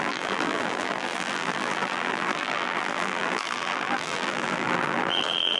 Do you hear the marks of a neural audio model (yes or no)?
yes